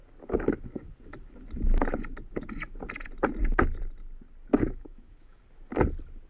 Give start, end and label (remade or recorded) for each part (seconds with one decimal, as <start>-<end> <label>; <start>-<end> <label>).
0.0-4.5 recorded; 4.5-5.4 remade; 5.4-6.3 recorded